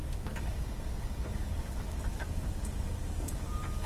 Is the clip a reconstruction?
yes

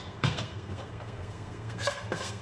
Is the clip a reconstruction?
yes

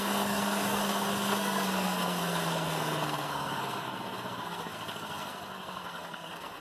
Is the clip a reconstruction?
yes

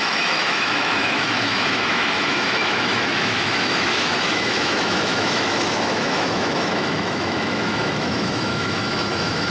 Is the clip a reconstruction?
yes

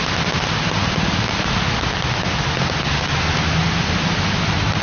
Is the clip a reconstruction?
no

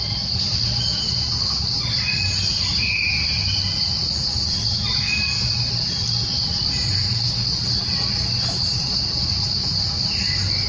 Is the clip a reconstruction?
no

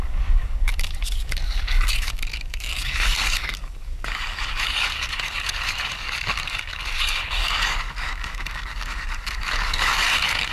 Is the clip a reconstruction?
yes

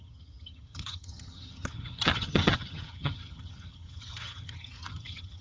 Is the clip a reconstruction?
yes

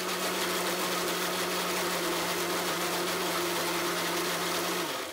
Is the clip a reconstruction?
no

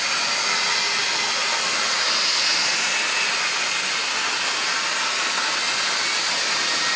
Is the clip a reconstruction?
no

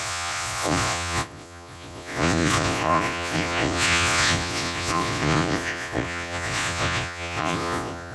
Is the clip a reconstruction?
yes